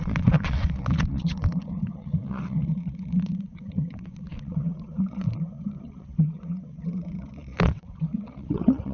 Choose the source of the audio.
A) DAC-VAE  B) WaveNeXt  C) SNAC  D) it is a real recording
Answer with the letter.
B